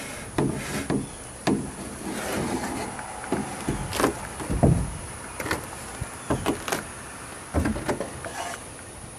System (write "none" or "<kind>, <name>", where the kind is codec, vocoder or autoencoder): none